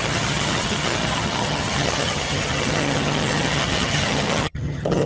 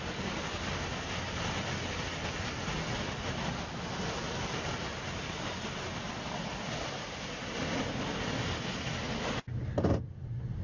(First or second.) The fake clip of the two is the first